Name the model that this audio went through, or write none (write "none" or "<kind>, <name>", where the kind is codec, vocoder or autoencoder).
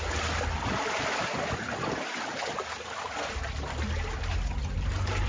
none